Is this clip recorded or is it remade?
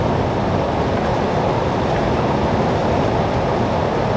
recorded